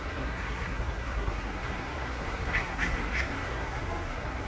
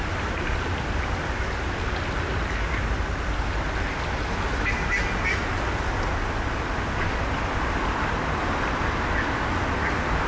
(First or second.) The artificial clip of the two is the first